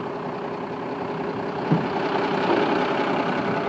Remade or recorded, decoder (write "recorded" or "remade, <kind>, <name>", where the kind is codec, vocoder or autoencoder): recorded